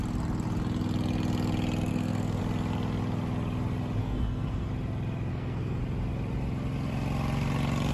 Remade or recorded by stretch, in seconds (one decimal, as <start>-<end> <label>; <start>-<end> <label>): 0.0-1.9 recorded; 1.9-2.4 remade; 2.4-4.0 recorded; 4.0-4.7 remade; 4.7-5.3 recorded; 5.3-5.8 remade; 5.8-7.9 recorded